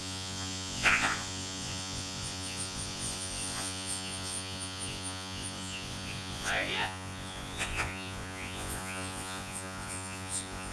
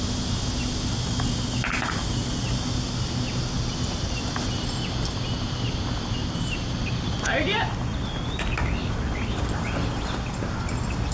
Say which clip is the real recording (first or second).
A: second